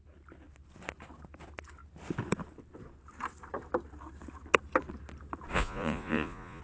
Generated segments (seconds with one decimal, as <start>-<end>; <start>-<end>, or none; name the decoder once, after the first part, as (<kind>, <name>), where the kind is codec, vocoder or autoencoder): 5.5-6.6 (vocoder, Vocos)